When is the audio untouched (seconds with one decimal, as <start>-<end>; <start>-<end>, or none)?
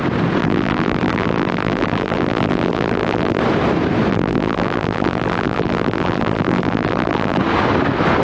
0.0-0.4; 3.4-4.1; 7.4-8.2